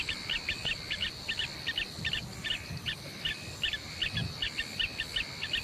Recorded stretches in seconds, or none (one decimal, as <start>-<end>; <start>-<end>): 0.0-5.6